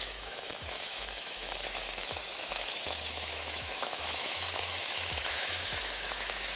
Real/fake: fake